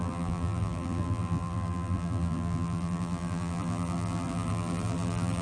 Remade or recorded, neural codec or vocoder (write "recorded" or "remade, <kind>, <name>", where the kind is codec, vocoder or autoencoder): remade, vocoder, BigVGAN v2